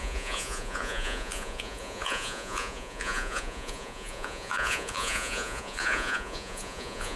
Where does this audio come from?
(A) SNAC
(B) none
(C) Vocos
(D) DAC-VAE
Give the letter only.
C